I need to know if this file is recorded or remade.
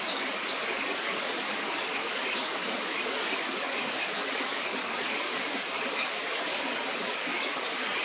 remade